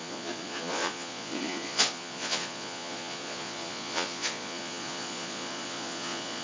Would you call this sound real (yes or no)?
no